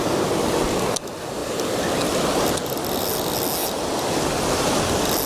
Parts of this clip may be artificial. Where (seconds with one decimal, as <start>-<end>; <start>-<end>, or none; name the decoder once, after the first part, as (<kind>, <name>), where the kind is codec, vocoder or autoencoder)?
none